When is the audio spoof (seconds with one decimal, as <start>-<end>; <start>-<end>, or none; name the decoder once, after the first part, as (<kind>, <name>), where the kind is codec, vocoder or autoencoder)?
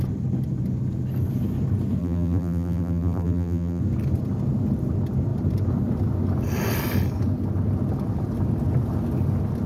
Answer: 2.0-3.8 (vocoder, BigVGAN v2)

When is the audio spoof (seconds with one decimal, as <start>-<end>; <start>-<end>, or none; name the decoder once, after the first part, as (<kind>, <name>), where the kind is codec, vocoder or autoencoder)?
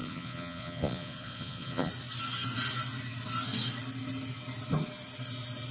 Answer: 0.0-1.9 (vocoder, Vocos)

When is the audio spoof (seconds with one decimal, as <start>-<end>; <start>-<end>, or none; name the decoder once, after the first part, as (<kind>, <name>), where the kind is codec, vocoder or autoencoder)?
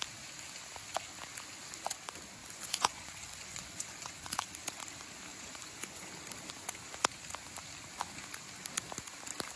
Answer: 2.4-4.5 (vocoder, Vocos); 5.3-6.1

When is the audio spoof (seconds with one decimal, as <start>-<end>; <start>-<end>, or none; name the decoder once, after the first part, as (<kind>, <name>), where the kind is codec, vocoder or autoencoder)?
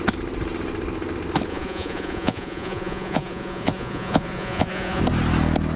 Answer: 1.5-5.0 (vocoder, Vocos)